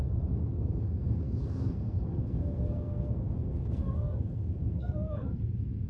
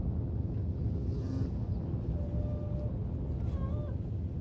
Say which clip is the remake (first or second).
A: first